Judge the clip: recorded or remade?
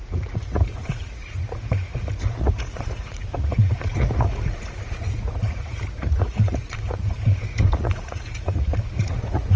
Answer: remade